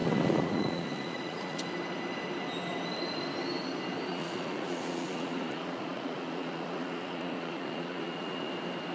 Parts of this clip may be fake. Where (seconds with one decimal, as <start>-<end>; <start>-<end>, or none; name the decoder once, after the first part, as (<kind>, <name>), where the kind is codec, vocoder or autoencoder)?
0.0-1.6 (vocoder, Vocos); 4.1-8.5